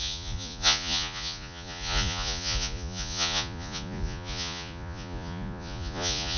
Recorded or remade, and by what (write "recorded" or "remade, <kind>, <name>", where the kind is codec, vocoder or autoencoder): remade, vocoder, Vocos